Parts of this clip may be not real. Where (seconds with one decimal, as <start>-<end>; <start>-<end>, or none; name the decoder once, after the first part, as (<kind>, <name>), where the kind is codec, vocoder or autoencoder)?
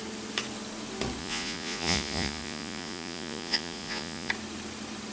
1.2-4.3 (vocoder, Vocos)